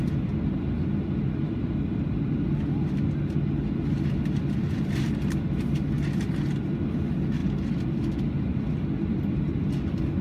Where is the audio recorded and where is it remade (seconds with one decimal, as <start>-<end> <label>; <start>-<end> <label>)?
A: 0.0-10.2 recorded